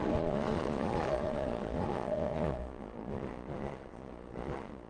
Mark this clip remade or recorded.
remade